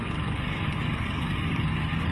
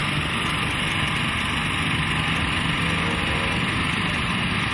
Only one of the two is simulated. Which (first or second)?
first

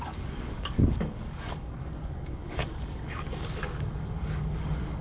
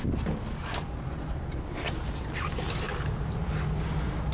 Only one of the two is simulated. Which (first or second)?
first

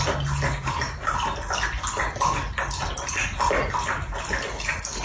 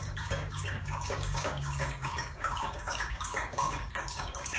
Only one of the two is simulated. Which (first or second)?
second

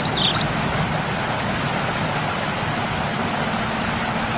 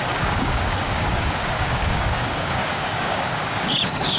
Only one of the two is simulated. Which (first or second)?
second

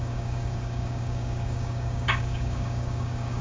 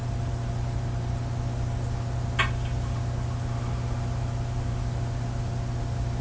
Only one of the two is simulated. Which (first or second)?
first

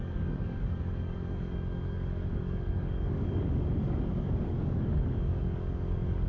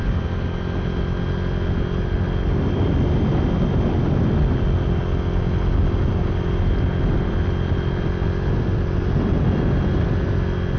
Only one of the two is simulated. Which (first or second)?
first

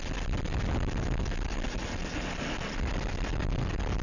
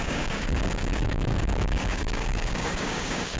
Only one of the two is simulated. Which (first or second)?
second